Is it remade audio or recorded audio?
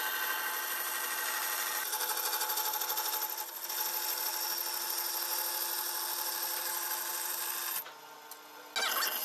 recorded